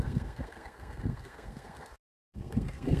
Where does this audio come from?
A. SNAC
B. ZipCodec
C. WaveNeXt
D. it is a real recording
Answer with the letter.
A